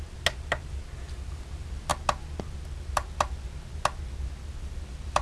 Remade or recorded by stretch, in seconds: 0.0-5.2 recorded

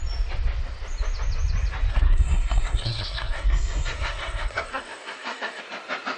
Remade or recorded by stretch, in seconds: 0.0-1.9 recorded; 1.9-5.6 remade; 5.6-6.2 recorded

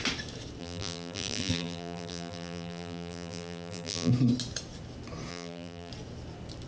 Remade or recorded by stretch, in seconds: 0.0-0.6 recorded; 0.6-4.1 remade; 4.1-5.3 recorded; 5.3-5.9 remade; 5.9-6.7 recorded

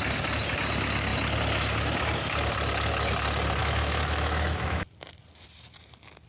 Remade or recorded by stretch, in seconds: 0.0-3.6 recorded; 3.6-4.8 remade; 4.8-6.3 recorded